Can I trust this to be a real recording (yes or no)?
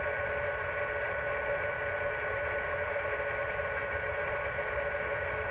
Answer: yes